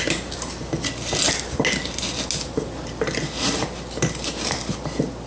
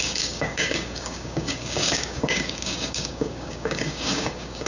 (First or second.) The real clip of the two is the first